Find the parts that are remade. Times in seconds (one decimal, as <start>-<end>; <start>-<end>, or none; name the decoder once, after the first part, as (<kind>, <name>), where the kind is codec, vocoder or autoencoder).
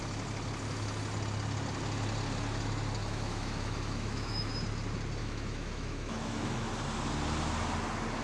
3.0-4.5 (autoencoder, DAC-VAE); 5.2-6.7